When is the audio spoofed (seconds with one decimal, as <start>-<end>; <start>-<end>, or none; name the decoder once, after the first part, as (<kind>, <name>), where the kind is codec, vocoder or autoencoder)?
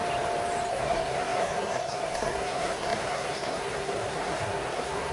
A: 0.7-5.1 (codec, SNAC)